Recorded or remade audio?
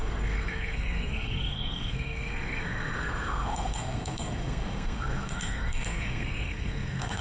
remade